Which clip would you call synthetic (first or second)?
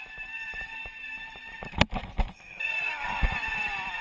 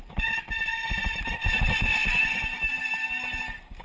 first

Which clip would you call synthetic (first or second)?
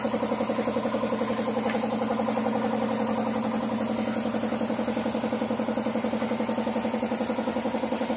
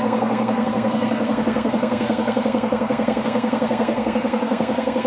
second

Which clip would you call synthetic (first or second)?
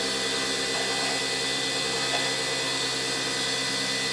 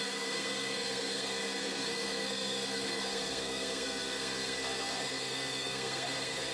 second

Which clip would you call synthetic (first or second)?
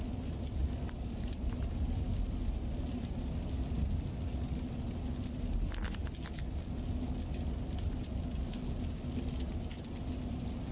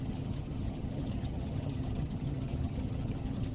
second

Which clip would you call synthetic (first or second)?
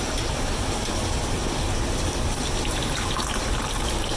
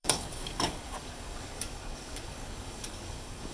second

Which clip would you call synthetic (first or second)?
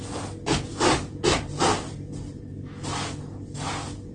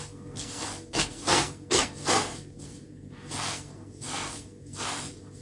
second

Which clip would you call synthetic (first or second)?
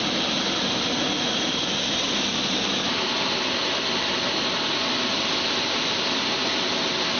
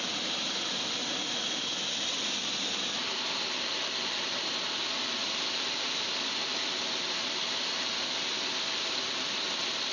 second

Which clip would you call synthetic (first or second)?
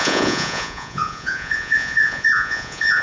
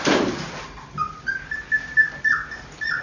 first